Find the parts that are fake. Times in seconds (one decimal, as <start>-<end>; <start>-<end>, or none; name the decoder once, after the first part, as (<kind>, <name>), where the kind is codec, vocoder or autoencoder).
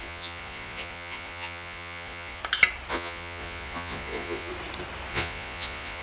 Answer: 0.0-2.4 (vocoder, Vocos); 2.9-4.5; 5.1-6.0